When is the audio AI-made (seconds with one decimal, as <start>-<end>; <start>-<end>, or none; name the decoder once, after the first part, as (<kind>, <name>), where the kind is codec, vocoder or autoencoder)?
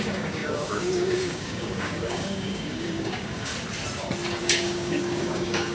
0.0-3.5 (codec, DAC); 4.4-5.7